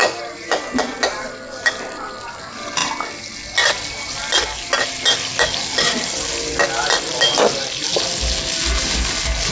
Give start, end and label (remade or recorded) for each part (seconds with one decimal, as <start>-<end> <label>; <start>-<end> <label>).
0.0-9.5 recorded